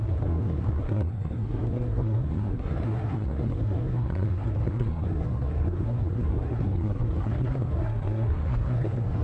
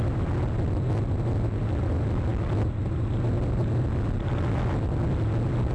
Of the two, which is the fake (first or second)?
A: first